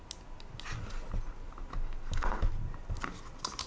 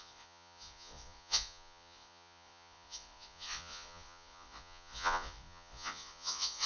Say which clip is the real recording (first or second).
first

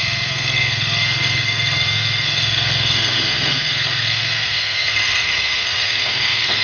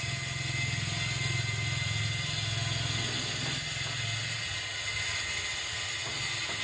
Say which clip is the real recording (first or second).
second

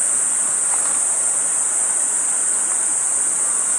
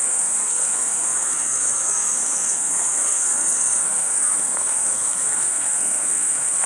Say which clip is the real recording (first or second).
first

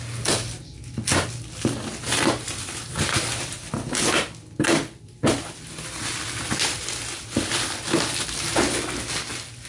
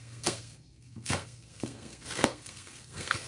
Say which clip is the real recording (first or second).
first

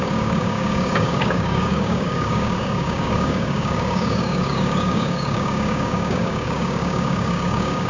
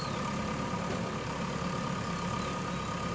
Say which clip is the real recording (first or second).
second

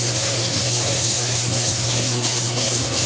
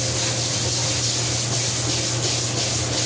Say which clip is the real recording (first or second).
second